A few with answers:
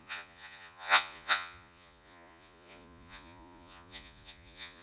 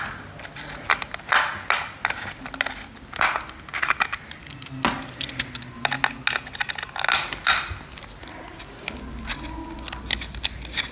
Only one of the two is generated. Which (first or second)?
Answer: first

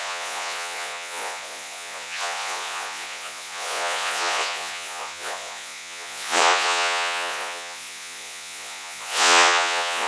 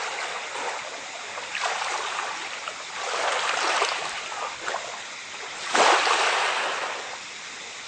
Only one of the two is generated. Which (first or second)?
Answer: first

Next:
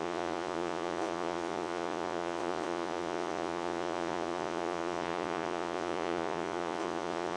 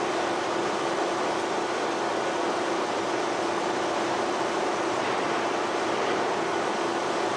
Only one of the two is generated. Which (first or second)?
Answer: first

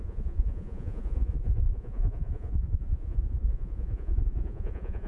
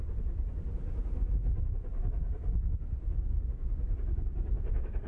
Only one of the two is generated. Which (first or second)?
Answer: first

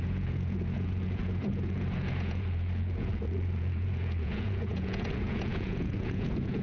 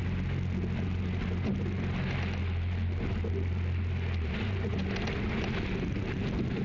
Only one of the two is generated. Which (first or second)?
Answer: first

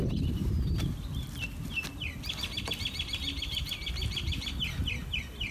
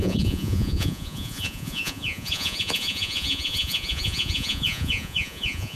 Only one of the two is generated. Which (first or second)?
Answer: second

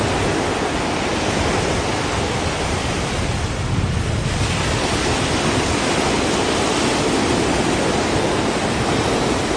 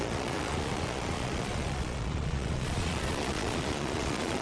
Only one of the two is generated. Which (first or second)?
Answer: second